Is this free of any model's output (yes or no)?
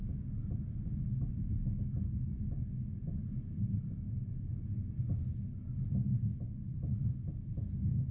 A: yes